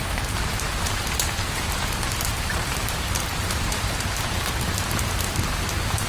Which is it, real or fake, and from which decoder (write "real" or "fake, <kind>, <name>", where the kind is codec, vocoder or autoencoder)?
fake, vocoder, BigVGAN v2